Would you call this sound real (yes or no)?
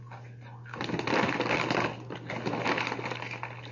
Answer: yes